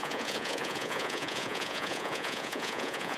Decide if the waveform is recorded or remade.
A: remade